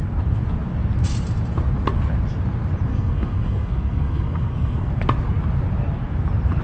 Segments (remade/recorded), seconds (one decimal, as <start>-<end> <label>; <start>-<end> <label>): 0.0-2.9 recorded; 2.9-4.9 remade; 4.9-6.6 recorded